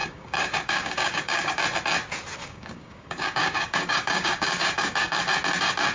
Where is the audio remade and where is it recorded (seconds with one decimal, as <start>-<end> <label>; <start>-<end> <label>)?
0.0-1.6 remade; 1.6-2.4 recorded; 2.4-5.2 remade; 5.2-5.9 recorded

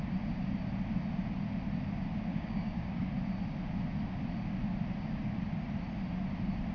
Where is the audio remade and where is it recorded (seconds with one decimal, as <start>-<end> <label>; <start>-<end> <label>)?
0.0-2.3 recorded; 2.3-3.1 remade; 3.1-6.7 recorded

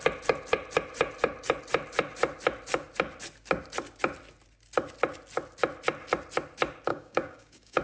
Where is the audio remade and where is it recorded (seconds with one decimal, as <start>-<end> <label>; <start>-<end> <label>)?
0.0-6.9 recorded; 6.9-7.8 remade

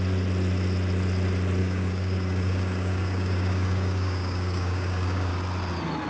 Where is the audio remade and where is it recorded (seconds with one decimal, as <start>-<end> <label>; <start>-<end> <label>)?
0.0-1.6 recorded; 1.6-5.3 remade; 5.3-6.1 recorded

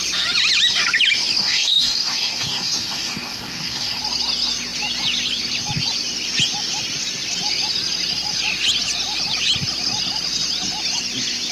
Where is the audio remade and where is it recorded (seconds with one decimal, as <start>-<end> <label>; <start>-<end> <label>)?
0.0-1.4 recorded; 1.4-4.0 remade; 4.0-11.5 recorded